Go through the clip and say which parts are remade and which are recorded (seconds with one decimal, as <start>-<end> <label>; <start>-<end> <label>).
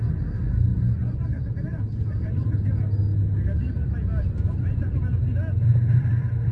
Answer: 0.0-6.5 recorded